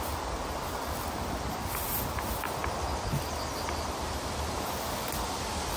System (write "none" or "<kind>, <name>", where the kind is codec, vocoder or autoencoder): none